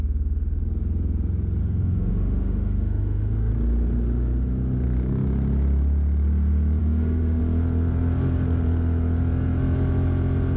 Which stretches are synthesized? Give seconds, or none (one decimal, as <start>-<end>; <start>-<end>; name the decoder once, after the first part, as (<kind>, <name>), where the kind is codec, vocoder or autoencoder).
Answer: 1.6-3.5 (autoencoder, DAC-VAE); 6.8-7.4